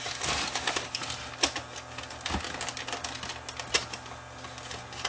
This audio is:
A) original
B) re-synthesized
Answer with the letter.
A